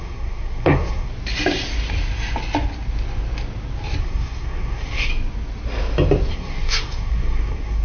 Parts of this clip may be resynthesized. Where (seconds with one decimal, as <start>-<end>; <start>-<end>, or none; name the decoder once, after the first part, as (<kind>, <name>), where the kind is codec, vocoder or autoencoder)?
0.0-1.1 (codec, SNAC); 4.0-5.1; 6.3-7.8